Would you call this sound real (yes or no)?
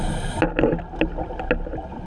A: yes